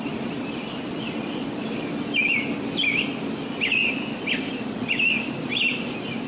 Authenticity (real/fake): real